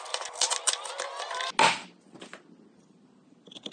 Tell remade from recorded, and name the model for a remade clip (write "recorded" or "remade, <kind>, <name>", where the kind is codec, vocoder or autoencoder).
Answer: recorded